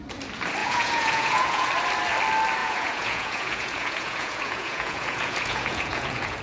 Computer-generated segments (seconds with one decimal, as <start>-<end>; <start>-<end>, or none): 0.6-1.7; 2.6-6.4